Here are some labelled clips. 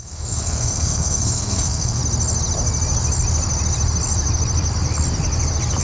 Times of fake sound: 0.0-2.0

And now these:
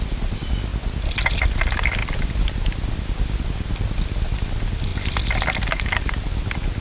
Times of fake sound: none